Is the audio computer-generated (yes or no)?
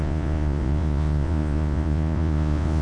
yes